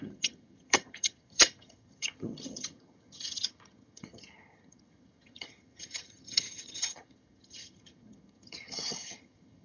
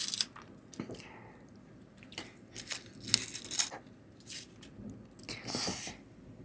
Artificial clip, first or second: first